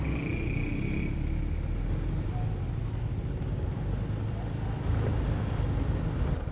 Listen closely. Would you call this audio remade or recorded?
recorded